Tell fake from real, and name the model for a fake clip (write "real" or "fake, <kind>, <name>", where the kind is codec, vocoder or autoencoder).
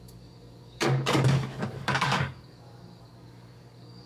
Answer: fake, codec, DAC